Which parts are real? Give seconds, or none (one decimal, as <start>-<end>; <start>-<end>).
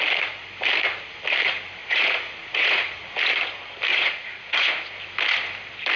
0.0-1.8; 3.1-3.9; 4.7-6.0